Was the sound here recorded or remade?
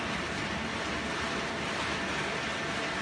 recorded